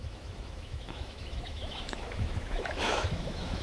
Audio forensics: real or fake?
fake